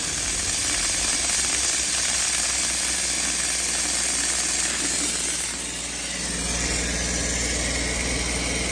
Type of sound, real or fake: real